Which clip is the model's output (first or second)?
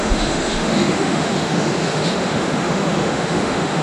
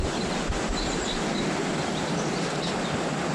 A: first